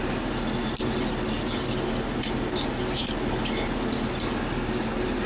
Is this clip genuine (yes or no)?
yes